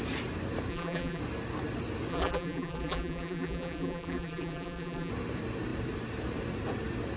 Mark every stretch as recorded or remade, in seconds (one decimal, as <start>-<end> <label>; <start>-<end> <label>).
0.0-0.7 recorded; 0.7-1.2 remade; 1.2-2.1 recorded; 2.1-5.1 remade; 5.1-7.2 recorded